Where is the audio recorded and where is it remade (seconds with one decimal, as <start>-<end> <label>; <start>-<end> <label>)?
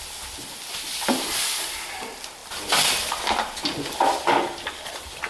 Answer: 0.0-5.3 recorded